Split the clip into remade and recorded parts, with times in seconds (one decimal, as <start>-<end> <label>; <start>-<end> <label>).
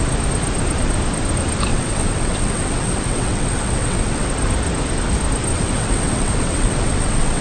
0.0-1.7 recorded; 1.7-4.3 remade; 4.3-5.5 recorded; 5.5-7.4 remade